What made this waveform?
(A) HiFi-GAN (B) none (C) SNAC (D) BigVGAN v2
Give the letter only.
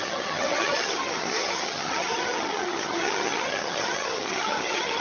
A